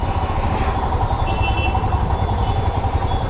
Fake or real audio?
real